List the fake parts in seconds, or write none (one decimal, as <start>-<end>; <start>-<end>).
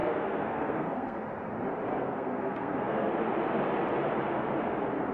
0.0-1.2; 1.9-3.1